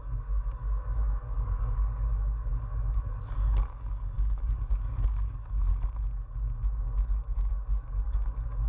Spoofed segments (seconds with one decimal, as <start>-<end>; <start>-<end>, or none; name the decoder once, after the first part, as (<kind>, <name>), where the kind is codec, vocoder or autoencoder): 0.0-5.7 (codec, DAC); 6.7-8.7